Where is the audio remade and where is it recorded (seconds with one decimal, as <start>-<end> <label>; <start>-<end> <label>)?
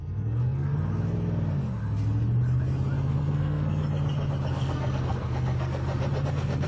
0.0-0.7 remade; 0.7-3.2 recorded; 3.2-3.8 remade; 3.8-4.5 recorded; 4.5-5.8 remade; 5.8-6.3 recorded; 6.3-6.7 remade